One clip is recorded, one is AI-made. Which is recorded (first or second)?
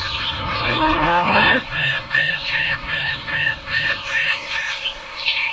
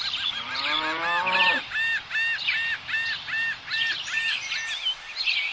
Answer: second